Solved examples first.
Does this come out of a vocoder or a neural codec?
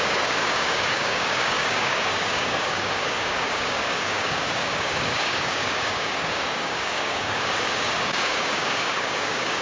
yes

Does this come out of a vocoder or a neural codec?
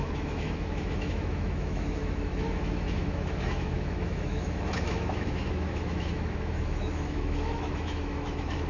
yes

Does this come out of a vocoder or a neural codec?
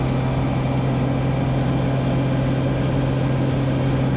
no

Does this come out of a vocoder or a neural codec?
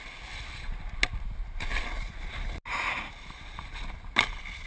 no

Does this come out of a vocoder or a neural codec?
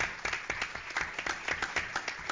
no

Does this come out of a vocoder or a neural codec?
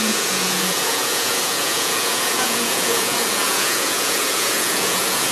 yes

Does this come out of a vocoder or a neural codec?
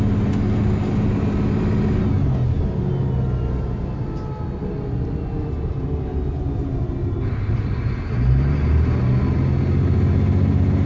no